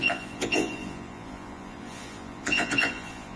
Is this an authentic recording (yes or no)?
no